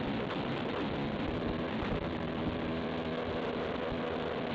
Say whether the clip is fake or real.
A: real